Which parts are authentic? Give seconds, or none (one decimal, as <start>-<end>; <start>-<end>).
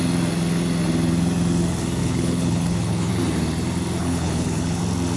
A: 0.0-2.0; 3.1-4.0; 4.8-5.2